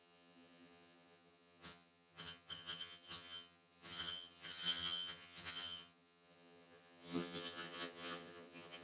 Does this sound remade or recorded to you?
remade